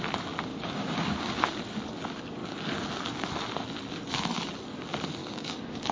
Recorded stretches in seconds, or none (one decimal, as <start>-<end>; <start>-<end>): 0.0-0.5; 1.6-5.2